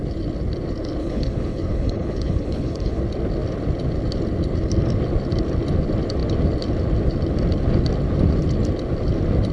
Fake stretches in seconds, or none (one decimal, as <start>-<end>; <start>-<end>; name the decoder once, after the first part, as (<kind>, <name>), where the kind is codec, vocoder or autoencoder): 1.0-3.0 (codec, HILCodec)